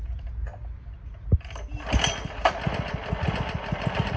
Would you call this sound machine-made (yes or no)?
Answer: no